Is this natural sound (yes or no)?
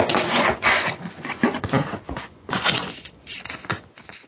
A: no